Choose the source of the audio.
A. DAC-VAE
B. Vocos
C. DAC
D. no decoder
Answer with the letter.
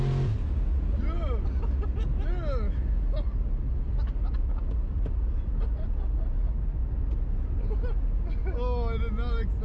D